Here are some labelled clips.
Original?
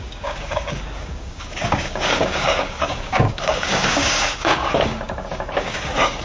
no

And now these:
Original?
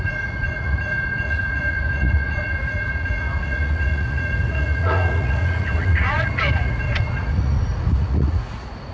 no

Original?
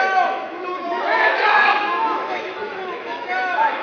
no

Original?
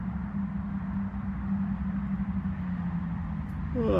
yes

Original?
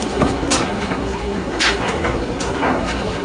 no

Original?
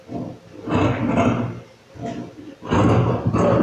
yes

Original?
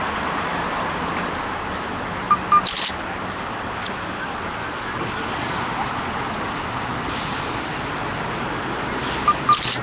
yes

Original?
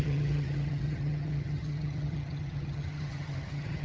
no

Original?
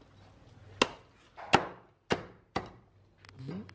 yes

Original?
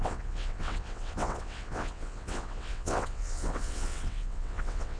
no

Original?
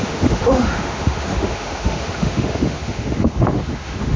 no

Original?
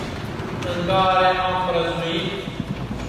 yes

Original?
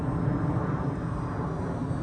yes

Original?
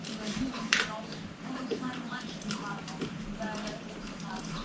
no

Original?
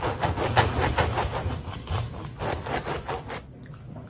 yes